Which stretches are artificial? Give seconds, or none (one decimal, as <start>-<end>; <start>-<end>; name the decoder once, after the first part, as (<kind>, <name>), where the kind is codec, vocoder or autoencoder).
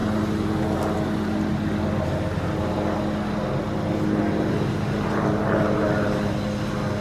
none